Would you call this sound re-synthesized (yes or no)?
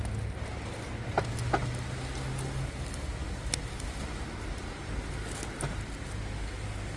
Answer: no